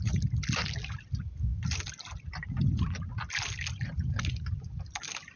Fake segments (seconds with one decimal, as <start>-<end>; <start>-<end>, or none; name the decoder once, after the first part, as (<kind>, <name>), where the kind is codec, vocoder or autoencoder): none